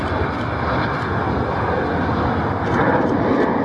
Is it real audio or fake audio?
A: real